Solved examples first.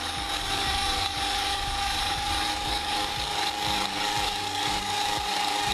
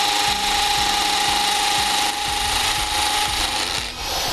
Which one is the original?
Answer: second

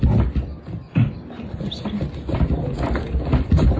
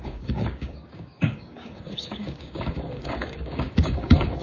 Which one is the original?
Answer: first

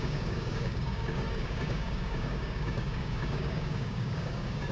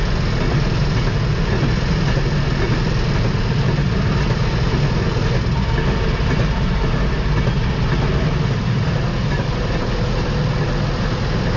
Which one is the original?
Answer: second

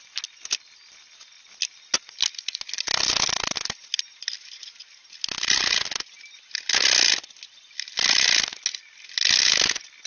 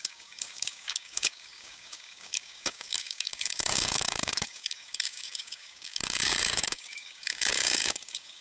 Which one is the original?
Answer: first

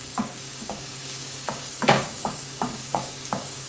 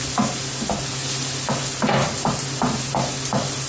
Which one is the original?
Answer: second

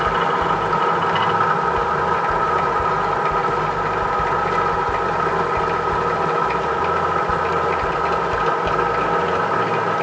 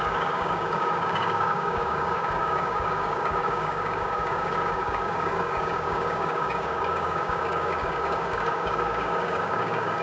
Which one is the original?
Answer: first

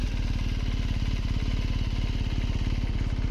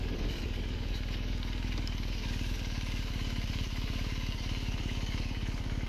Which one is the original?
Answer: first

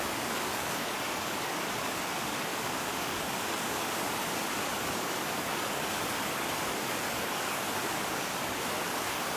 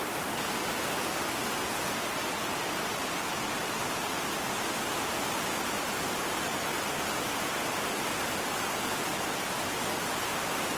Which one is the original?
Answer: second